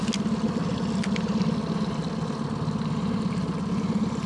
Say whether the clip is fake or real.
real